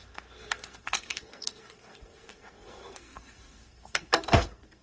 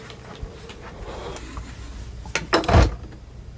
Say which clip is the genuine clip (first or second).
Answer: second